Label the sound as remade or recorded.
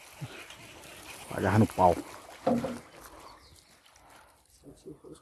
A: recorded